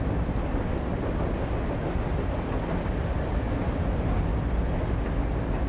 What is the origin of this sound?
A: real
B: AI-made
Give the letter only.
A